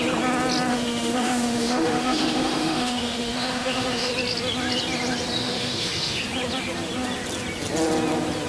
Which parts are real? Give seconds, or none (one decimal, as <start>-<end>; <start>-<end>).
0.0-0.7; 4.1-5.4; 6.2-8.5

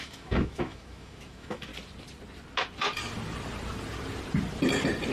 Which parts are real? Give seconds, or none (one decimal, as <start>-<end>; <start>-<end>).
1.7-5.1

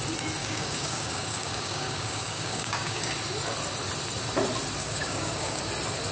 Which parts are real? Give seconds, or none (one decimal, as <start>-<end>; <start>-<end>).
0.0-0.4; 3.1-4.8; 5.6-6.1

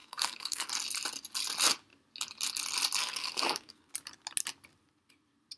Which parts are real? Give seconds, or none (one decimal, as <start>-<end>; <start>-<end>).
0.7-3.0; 3.9-5.6